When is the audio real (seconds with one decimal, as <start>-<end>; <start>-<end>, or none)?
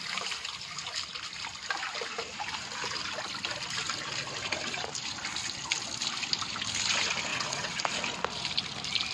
0.0-7.3; 7.8-9.1